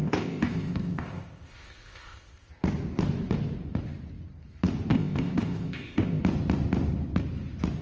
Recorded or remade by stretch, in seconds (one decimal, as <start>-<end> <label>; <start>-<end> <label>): 0.0-2.5 remade; 2.5-4.9 recorded; 4.9-6.2 remade; 6.2-7.8 recorded